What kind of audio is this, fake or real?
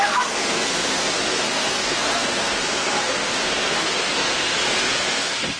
fake